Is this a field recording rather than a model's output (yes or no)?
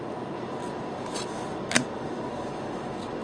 yes